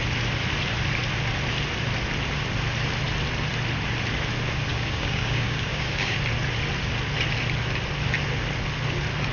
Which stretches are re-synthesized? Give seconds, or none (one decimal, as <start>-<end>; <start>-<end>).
4.7-6.2